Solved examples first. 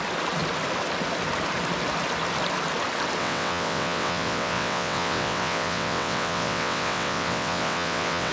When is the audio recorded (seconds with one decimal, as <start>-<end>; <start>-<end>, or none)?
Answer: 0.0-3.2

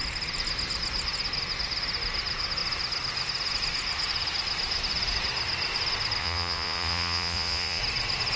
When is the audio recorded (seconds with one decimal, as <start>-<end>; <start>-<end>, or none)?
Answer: 0.0-6.2; 7.8-8.4

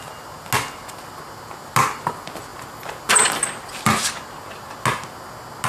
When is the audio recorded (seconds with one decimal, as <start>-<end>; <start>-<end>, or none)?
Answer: 0.0-5.7